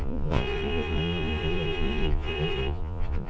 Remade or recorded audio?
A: remade